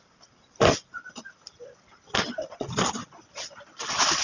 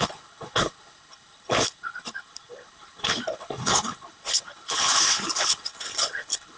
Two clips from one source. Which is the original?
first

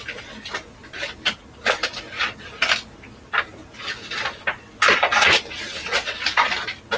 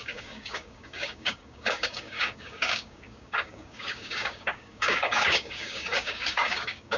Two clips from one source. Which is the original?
first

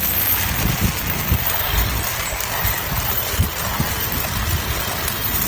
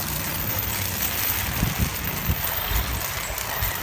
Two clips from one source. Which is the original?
first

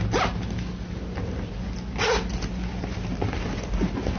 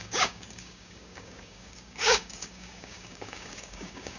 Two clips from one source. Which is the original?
first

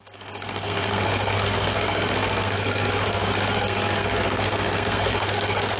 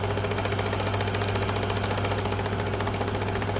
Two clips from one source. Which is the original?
second